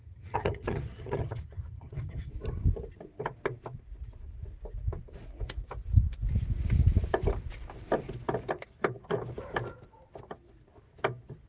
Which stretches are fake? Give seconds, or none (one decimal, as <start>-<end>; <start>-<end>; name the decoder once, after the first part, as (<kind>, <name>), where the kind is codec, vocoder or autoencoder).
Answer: 0.0-2.3 (vocoder, HiFi-GAN)